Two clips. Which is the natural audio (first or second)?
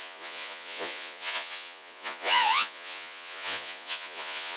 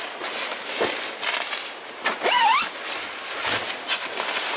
second